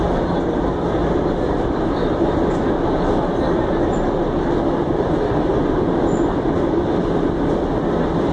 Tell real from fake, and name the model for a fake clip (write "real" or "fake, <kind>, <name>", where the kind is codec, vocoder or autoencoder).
real